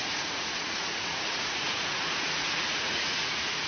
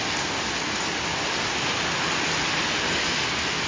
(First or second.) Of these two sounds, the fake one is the first